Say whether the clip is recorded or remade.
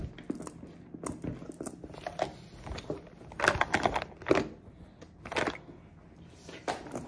recorded